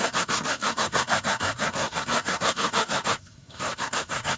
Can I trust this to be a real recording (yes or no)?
no